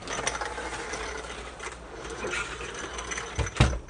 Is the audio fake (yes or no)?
no